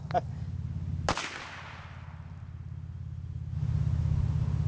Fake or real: real